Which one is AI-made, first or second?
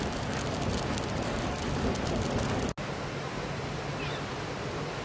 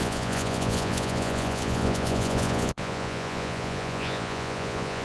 second